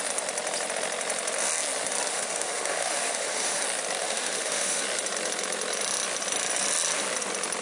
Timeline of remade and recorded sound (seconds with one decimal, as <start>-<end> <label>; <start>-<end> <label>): 0.0-2.1 recorded; 2.1-3.6 remade; 3.6-4.0 recorded; 4.0-4.8 remade; 4.8-7.6 recorded